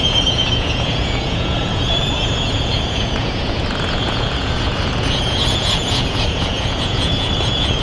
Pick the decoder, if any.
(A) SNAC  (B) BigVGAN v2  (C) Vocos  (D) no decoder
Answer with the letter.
C